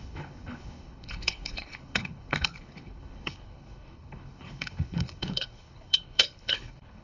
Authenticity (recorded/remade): remade